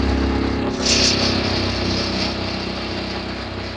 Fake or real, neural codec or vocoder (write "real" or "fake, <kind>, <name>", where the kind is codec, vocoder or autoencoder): real